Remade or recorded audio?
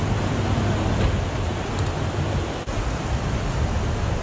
recorded